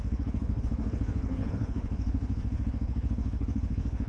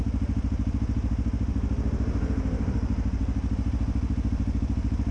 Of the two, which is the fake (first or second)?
first